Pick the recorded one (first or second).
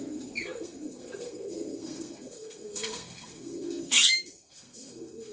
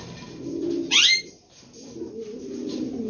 second